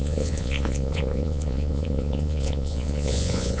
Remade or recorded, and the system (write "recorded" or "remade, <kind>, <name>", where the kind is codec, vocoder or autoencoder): remade, vocoder, Vocos